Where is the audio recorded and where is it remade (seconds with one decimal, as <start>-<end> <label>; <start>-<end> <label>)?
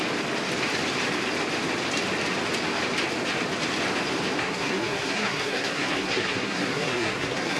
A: 0.0-4.4 recorded; 4.4-7.6 remade